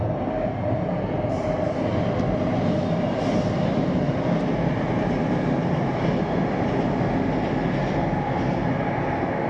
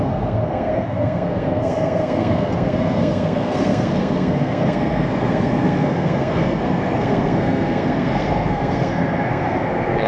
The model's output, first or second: second